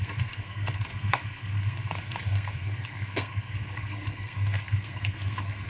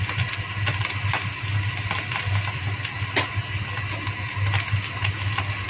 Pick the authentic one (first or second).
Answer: second